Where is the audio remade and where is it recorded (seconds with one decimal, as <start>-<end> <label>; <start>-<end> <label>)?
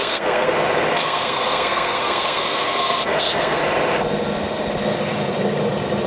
0.0-0.5 remade; 0.5-0.9 recorded; 0.9-3.6 remade; 3.6-6.1 recorded